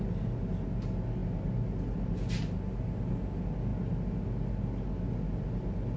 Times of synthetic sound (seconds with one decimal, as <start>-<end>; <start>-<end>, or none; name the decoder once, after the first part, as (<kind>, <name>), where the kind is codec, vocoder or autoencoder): none